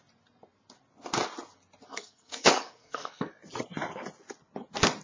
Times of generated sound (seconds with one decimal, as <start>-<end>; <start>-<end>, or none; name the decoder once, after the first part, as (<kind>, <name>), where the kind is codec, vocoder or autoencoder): 1.9-3.3 (codec, SNAC)